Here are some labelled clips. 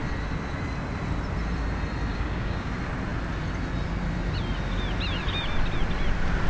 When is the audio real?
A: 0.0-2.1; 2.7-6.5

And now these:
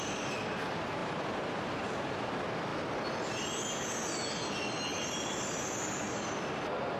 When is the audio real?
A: 0.0-1.0; 2.3-4.9; 6.0-7.0

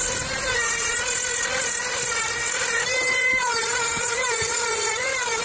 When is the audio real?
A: 0.0-5.4

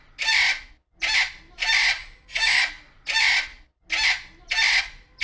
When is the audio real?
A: 0.0-2.0; 2.6-5.2

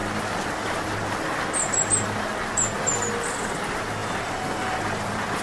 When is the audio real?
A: 0.0-5.4

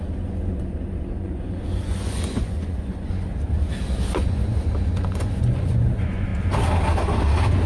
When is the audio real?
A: 3.3-4.1; 6.3-7.7

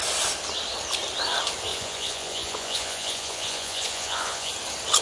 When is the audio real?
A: 0.0-1.7; 4.5-5.0